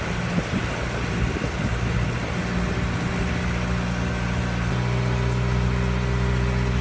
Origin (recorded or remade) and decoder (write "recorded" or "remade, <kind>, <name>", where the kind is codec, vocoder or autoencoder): recorded